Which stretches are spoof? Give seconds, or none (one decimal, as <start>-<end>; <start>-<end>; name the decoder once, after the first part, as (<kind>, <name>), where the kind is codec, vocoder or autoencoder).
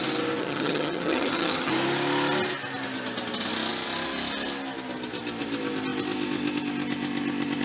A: 0.4-1.7 (vocoder, HiFi-GAN)